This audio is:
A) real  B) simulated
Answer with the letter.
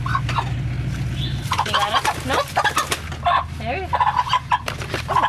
A